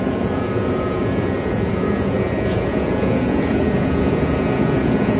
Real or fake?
fake